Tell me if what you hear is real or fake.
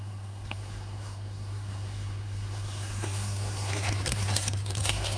fake